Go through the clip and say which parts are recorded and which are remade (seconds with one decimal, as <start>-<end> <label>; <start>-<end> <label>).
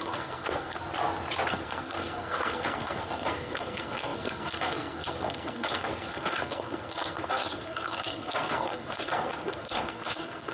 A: 0.0-0.8 remade; 0.8-1.5 recorded; 1.5-10.5 remade